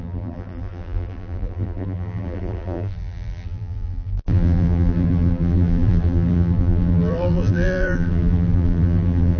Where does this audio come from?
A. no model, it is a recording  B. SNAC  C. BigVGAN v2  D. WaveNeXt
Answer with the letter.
C